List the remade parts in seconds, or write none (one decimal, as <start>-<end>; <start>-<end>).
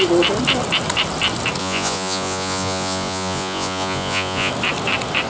1.6-4.5